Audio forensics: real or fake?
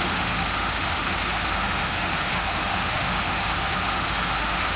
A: fake